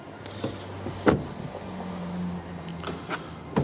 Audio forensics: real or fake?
real